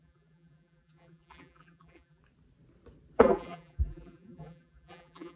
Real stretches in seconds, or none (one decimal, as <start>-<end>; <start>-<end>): 2.2-3.2